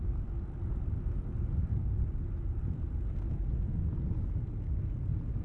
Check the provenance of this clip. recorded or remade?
recorded